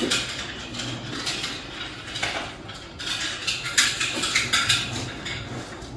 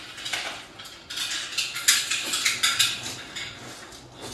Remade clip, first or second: first